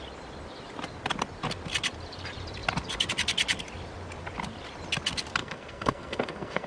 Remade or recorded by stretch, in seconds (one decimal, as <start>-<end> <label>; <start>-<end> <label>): 0.0-5.4 recorded; 5.4-6.7 remade